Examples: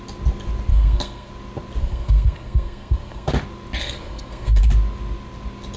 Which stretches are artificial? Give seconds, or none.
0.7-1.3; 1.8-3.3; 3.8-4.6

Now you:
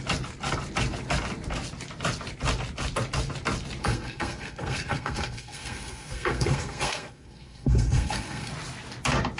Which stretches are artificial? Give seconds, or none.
3.8-8.5